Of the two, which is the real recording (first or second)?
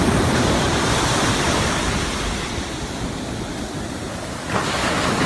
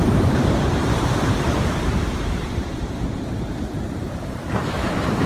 first